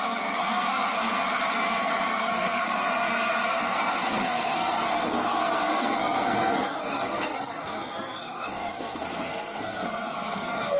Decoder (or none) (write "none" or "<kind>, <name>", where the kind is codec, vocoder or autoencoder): codec, SNAC